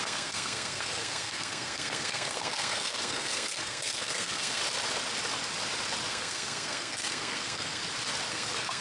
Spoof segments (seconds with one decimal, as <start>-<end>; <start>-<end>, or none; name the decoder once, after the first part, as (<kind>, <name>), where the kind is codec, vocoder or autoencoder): 0.0-4.6 (codec, SNAC); 6.1-7.8; 8.3-8.8